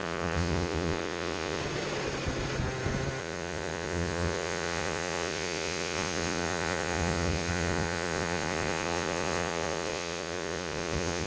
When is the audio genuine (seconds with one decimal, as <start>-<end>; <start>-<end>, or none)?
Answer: 1.6-3.2